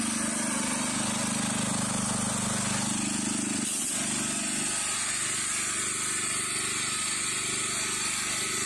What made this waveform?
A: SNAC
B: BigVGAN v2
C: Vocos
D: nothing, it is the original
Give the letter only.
D